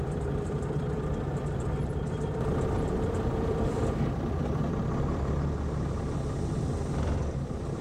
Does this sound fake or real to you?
fake